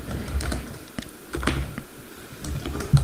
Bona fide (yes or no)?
no